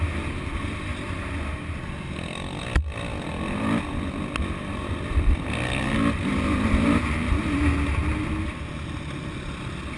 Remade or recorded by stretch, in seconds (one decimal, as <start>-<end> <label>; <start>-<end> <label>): 0.0-10.0 recorded